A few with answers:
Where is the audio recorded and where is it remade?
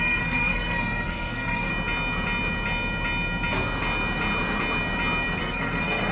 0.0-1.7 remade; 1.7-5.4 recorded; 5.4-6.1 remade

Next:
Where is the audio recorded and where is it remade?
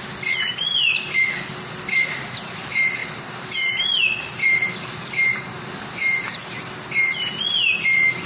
0.0-8.3 recorded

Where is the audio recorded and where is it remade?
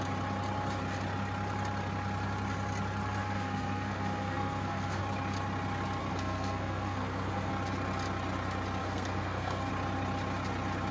0.0-3.2 recorded; 3.2-5.0 remade; 5.0-6.0 recorded; 6.0-7.5 remade; 7.5-8.8 recorded; 8.8-9.7 remade; 9.7-10.9 recorded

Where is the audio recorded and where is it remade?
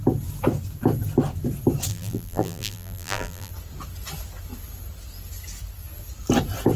0.0-1.9 recorded; 1.9-3.5 remade; 3.5-6.8 recorded